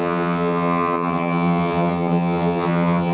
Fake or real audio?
fake